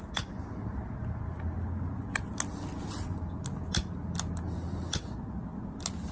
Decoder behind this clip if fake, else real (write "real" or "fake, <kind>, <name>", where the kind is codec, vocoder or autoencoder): real